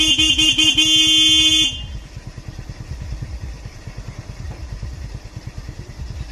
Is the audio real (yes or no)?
yes